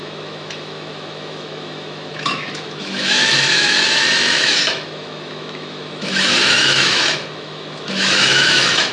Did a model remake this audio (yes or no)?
yes